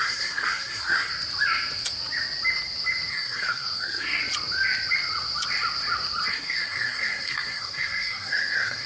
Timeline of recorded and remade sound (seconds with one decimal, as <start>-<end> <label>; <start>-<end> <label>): 0.0-1.1 remade; 1.1-3.1 recorded; 3.1-4.2 remade; 4.2-6.3 recorded; 6.3-8.9 remade